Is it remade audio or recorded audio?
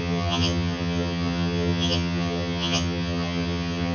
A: remade